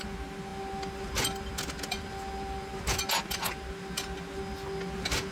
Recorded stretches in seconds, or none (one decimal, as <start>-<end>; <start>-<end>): 0.0-5.3